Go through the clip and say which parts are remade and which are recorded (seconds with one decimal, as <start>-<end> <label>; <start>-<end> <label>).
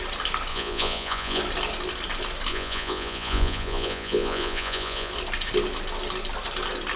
0.0-0.5 recorded; 0.5-1.4 remade; 1.4-2.5 recorded; 2.5-5.1 remade; 5.1-7.0 recorded